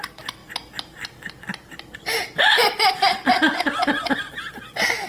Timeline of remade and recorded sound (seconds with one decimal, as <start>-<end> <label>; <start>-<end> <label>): 0.0-5.1 recorded